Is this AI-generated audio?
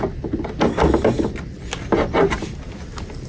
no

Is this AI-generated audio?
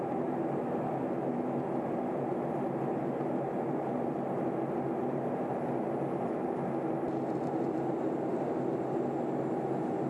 no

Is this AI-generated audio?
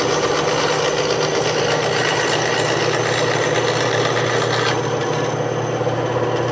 no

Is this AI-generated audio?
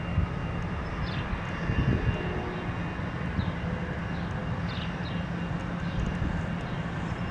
no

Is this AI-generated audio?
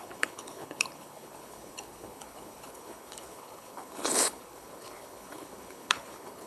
yes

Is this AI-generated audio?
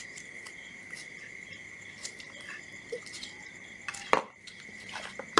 yes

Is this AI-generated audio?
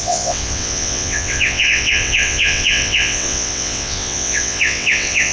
yes